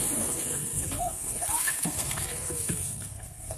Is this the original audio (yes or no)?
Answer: no